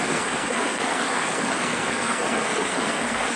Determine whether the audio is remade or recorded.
remade